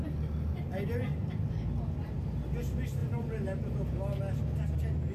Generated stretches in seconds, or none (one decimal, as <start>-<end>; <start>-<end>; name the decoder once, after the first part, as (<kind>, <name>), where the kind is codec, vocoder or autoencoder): none